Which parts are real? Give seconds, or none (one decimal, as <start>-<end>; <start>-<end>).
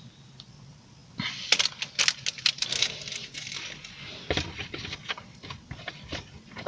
0.0-6.7